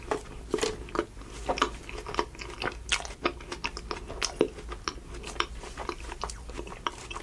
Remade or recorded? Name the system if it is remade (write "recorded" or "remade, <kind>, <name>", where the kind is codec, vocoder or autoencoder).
recorded